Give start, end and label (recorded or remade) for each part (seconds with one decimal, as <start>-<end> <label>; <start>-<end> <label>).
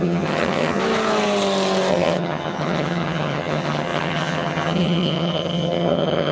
0.0-0.8 remade; 0.8-1.9 recorded; 1.9-6.3 remade